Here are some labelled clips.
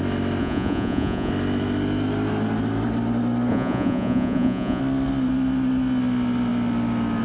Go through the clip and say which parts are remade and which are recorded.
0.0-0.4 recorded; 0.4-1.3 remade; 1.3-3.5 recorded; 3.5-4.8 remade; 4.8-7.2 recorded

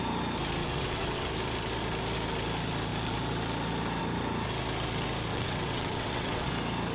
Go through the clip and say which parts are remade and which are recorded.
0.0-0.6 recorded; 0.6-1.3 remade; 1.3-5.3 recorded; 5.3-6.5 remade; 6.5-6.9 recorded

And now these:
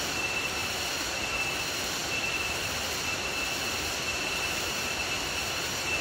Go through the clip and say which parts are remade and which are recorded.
0.0-6.0 recorded

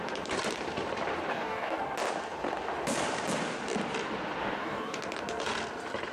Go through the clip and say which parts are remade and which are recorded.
0.0-1.3 recorded; 1.3-1.8 remade; 1.8-4.4 recorded; 4.4-5.0 remade; 5.0-6.1 recorded

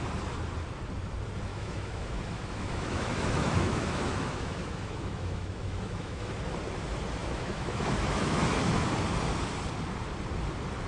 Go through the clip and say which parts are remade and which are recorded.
0.0-1.5 recorded; 1.5-6.3 remade; 6.3-7.2 recorded; 7.2-8.6 remade; 8.6-10.9 recorded

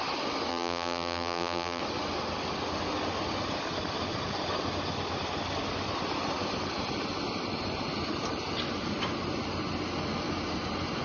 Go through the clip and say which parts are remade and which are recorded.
0.0-0.5 recorded; 0.5-1.8 remade; 1.8-11.0 recorded